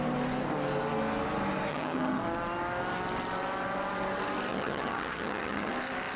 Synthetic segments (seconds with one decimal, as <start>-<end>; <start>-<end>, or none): 1.7-2.2; 4.5-5.7